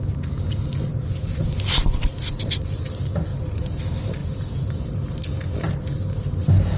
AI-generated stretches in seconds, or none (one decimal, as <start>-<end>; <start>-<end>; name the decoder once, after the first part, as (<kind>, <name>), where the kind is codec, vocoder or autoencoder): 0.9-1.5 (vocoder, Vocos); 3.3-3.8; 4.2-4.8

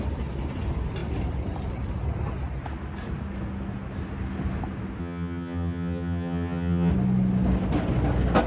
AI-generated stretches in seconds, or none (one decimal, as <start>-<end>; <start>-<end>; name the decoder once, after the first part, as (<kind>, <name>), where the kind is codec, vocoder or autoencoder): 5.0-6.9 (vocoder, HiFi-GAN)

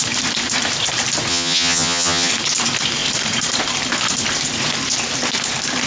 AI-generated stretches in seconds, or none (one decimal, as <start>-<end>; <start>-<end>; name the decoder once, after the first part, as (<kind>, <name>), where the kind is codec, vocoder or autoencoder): 1.3-2.3 (vocoder, HiFi-GAN)